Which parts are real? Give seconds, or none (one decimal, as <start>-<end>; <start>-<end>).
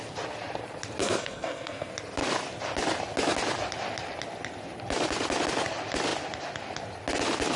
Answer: 0.0-1.0; 1.9-7.6